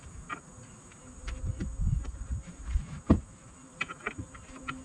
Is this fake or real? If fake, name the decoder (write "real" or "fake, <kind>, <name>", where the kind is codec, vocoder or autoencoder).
fake, vocoder, BigVGAN v2